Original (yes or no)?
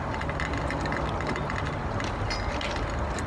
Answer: yes